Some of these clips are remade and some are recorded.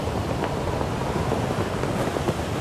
recorded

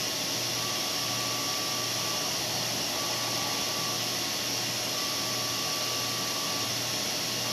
recorded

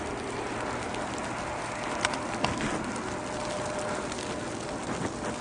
recorded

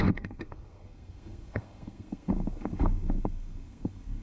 remade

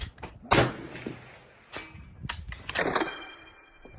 recorded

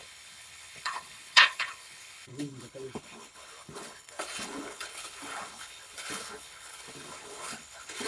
remade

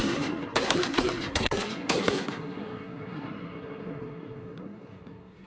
remade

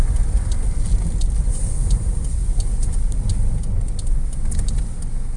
recorded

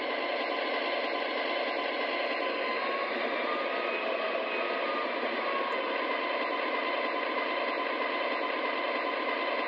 recorded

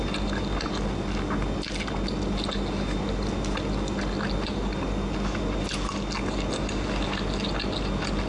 recorded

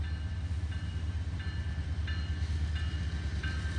recorded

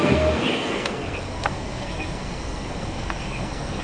remade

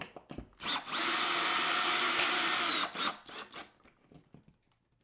recorded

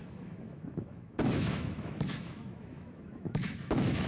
remade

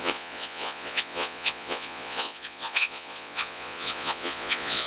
remade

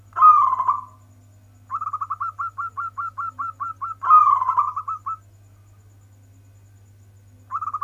recorded